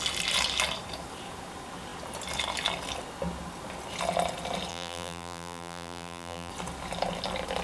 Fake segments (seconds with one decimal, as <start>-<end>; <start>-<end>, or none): 4.7-6.5